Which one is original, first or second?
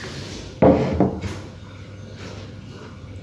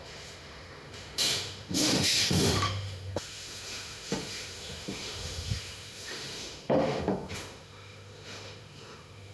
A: first